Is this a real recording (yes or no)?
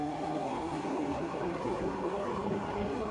no